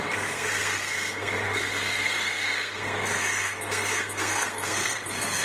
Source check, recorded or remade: remade